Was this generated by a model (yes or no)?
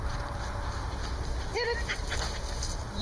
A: no